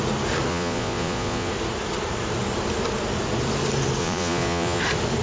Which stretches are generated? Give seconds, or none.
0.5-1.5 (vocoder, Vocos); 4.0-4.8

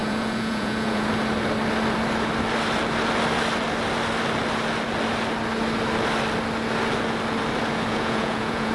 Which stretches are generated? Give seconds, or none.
0.0-1.1 (vocoder, Vocos); 7.9-8.7

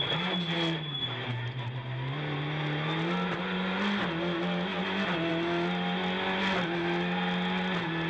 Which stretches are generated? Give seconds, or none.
none